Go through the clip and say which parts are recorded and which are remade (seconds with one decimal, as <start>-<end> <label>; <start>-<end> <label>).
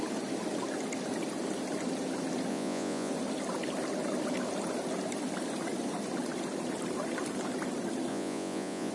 0.0-2.5 recorded; 2.5-3.1 remade; 3.1-8.1 recorded; 8.1-8.9 remade